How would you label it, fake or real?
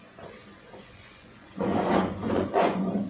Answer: fake